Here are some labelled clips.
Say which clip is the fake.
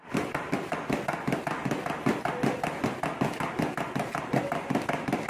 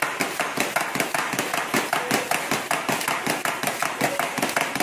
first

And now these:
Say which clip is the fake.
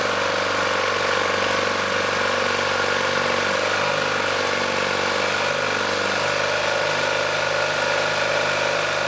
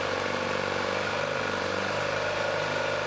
second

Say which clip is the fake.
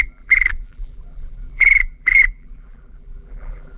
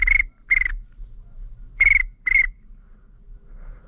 first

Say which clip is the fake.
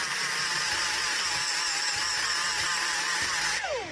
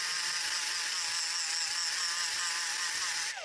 first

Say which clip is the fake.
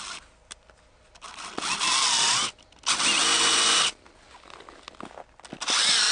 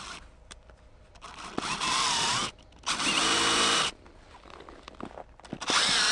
second